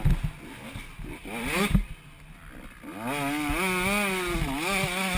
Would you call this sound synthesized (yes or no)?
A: no